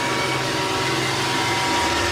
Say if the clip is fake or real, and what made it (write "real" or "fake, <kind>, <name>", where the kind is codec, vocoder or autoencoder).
real